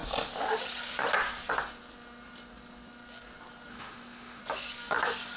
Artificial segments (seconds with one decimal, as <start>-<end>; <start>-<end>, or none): 3.7-4.4